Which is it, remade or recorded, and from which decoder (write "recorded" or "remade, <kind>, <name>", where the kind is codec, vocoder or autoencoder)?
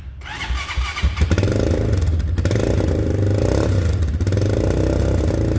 recorded